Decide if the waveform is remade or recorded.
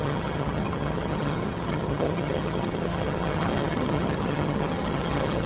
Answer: remade